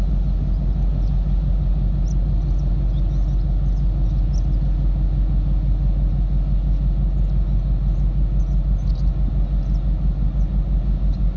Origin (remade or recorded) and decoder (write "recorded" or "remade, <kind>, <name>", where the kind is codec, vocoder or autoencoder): recorded